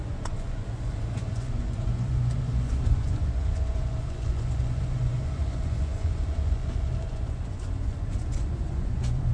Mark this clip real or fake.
fake